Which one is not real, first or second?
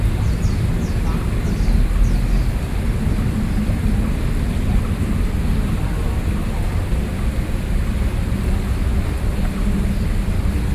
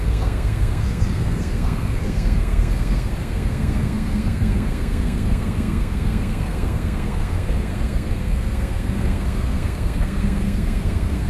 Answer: second